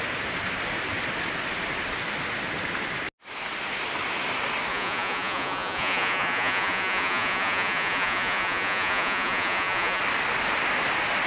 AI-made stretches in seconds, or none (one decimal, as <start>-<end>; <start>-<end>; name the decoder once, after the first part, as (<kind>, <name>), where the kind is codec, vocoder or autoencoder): 4.7-10.0 (vocoder, Vocos)